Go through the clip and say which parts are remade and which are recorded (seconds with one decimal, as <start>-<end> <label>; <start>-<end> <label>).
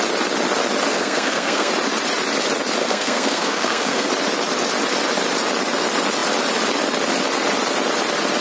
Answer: 0.0-0.9 recorded; 0.9-1.7 remade; 1.7-2.8 recorded; 2.8-4.1 remade; 4.1-8.4 recorded